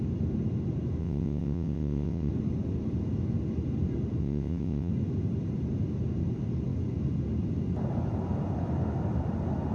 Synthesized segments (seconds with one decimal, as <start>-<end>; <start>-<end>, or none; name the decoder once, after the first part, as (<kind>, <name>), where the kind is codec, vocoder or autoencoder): 1.0-2.3 (vocoder, WaveNeXt); 4.2-4.9